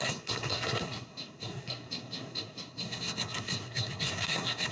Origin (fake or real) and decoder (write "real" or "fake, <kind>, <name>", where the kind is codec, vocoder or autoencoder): fake, codec, SNAC